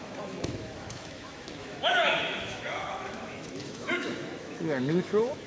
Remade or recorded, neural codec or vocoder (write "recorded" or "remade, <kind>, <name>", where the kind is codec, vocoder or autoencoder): remade, autoencoder, DAC-VAE